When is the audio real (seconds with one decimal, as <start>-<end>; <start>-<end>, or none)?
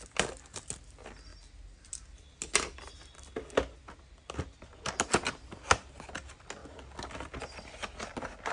0.0-8.5